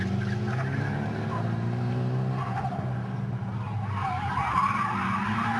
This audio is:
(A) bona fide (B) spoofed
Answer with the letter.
A